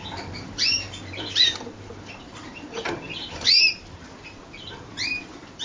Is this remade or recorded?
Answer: remade